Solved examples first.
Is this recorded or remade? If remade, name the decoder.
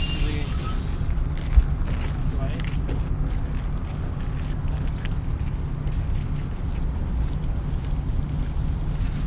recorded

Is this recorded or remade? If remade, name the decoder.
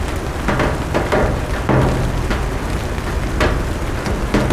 recorded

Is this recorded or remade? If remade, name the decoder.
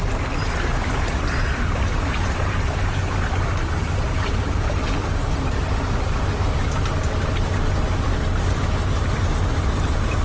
recorded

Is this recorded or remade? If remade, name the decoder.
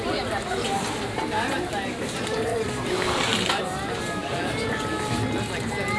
recorded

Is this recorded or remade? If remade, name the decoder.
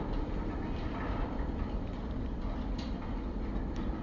recorded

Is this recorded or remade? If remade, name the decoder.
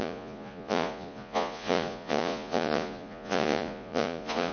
remade, vocoder, Vocos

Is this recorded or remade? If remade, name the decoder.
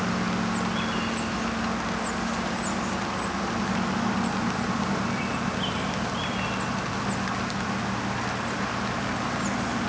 recorded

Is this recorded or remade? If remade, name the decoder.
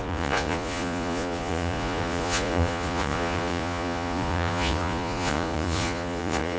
remade, vocoder, Vocos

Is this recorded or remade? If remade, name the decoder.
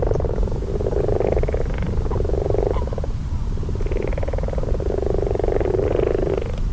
recorded